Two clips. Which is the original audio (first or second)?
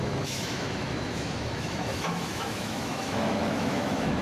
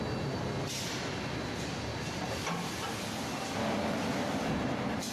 second